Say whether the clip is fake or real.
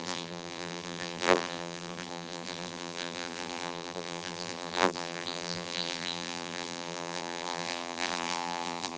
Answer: fake